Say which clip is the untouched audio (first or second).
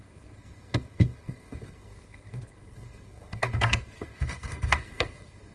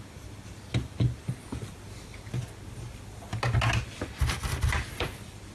second